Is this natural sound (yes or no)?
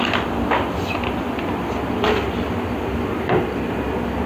yes